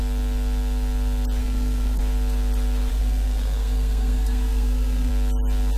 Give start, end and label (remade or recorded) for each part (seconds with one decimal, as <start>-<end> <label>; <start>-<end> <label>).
0.0-1.4 recorded; 1.4-2.0 remade; 2.0-2.9 recorded; 2.9-5.1 remade; 5.1-5.8 recorded